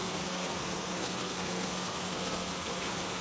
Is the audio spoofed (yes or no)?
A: yes